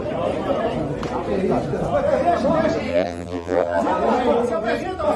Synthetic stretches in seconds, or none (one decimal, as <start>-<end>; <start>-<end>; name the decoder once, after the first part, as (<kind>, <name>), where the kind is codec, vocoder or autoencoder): 2.9-3.8 (vocoder, BigVGAN v2)